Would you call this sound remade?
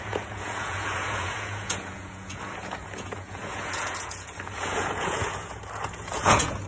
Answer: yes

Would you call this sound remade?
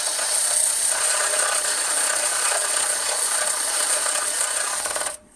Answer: yes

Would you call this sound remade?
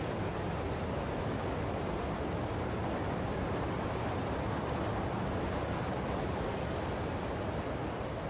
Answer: no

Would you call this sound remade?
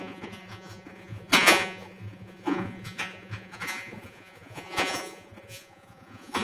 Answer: yes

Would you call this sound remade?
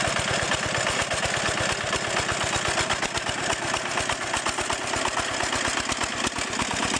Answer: no